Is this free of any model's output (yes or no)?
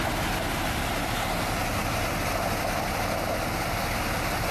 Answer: yes